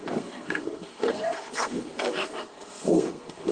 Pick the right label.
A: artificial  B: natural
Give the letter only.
A